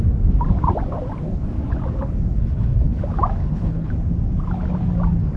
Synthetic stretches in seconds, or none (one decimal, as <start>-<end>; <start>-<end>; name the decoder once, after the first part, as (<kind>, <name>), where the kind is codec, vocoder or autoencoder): 2.4-3.0 (codec, HILCodec); 3.4-3.9